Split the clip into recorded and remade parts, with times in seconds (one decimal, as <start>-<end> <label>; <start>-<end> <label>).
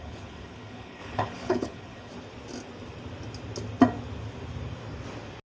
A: 0.0-2.1 remade; 2.1-5.6 recorded